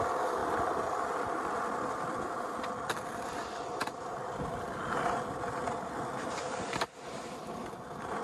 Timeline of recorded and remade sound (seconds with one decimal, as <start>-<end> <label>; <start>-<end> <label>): 0.0-3.8 recorded; 3.8-6.0 remade; 6.0-8.2 recorded